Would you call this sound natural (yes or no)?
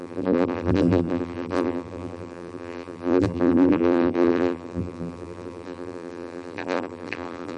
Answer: no